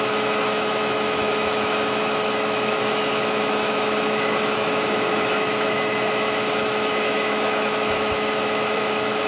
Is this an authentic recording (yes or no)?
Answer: no